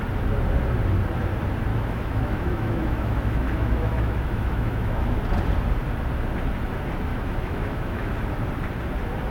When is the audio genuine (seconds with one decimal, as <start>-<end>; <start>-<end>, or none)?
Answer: 0.0-1.7; 5.2-7.1; 8.1-9.3